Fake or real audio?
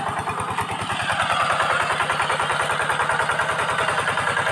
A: real